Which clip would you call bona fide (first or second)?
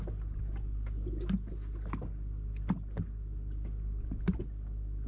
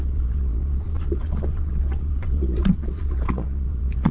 first